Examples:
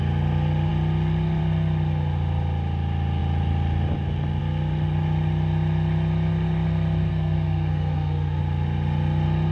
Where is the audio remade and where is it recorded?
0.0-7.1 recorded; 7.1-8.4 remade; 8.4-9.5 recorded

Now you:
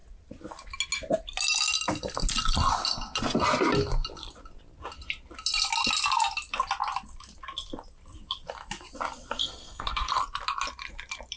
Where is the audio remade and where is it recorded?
0.0-9.4 recorded; 9.4-10.2 remade; 10.2-11.4 recorded

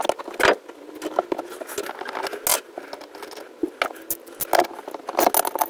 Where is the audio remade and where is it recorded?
0.0-5.7 recorded

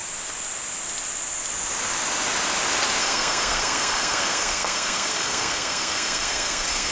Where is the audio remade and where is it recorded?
0.0-3.0 recorded; 3.0-6.9 remade

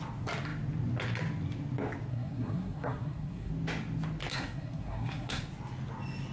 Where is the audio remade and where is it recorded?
0.0-2.1 recorded; 2.1-3.5 remade; 3.5-4.3 recorded; 4.3-5.4 remade; 5.4-6.3 recorded